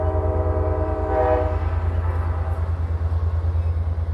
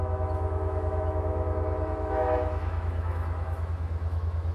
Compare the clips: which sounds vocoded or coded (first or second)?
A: second